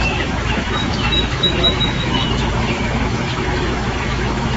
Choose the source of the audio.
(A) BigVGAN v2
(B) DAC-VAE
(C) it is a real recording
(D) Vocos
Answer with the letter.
B